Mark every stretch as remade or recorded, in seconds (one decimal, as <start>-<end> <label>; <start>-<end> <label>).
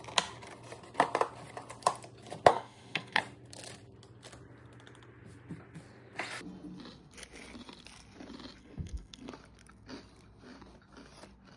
0.0-2.5 recorded; 2.5-3.2 remade; 3.2-8.6 recorded; 8.6-9.3 remade; 9.3-11.6 recorded